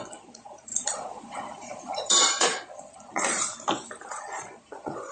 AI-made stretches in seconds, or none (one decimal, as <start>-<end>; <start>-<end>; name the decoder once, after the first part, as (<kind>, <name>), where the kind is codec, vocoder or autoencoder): 0.0-3.5 (vocoder, Vocos); 4.1-5.1